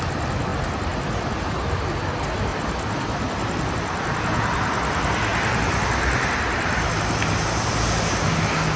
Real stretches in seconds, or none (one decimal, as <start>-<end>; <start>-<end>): 0.0-2.5; 3.7-8.8